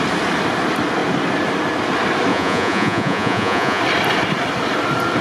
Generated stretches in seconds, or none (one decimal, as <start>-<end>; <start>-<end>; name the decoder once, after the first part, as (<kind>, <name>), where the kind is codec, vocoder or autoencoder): 2.3-3.8 (vocoder, Vocos)